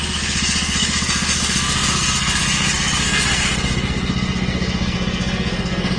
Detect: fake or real fake